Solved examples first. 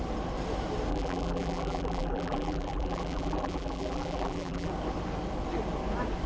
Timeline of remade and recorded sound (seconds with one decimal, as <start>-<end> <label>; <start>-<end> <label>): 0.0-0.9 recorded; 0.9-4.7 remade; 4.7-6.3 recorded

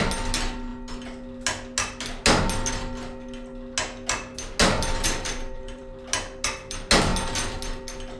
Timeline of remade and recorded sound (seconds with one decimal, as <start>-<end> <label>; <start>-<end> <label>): 0.0-4.6 recorded; 4.6-5.8 remade; 5.8-8.2 recorded

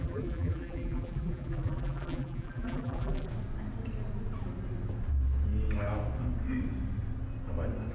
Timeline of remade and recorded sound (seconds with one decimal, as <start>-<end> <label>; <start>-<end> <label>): 0.0-3.3 remade; 3.3-7.9 recorded

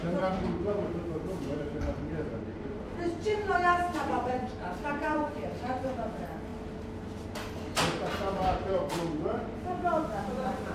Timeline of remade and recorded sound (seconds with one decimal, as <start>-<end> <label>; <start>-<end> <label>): 0.0-6.5 remade; 6.5-8.7 recorded; 8.7-10.7 remade